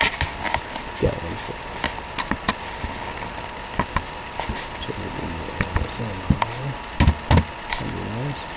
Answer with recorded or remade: recorded